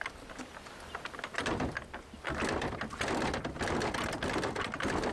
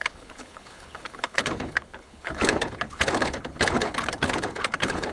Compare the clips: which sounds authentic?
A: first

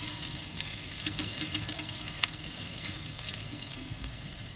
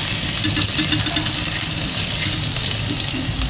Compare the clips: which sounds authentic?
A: second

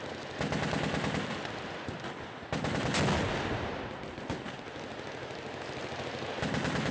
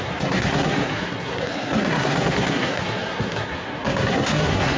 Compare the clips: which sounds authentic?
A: first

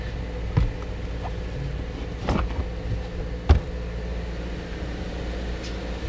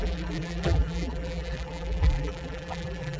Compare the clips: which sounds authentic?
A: first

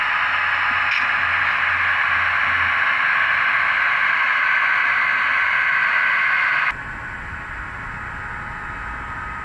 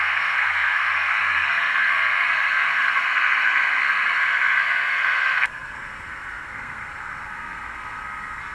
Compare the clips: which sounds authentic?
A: first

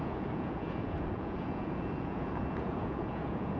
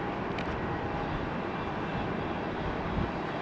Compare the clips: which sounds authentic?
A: second